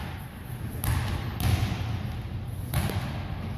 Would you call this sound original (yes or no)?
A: yes